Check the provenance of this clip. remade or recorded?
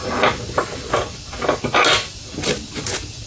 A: recorded